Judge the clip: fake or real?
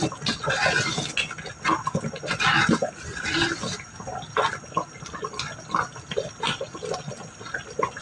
real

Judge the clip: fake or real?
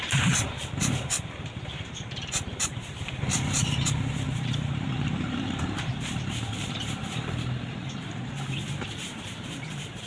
fake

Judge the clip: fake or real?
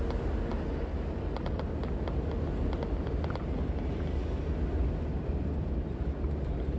real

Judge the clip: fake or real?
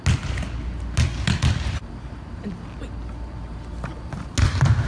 real